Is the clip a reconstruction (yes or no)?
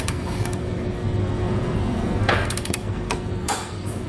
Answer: yes